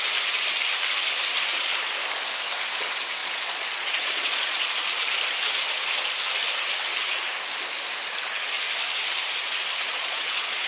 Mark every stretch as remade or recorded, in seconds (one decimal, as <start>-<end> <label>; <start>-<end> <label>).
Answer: 0.0-3.2 recorded; 3.2-4.7 remade; 4.7-9.9 recorded; 9.9-10.7 remade